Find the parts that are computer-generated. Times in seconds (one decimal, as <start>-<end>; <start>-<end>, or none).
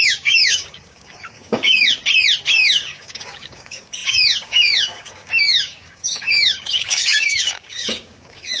0.0-2.0; 2.5-8.6